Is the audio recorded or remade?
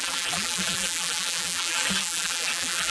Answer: remade